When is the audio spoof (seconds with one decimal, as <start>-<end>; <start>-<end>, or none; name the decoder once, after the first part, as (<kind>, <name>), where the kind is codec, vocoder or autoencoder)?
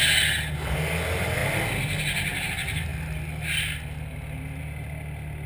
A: none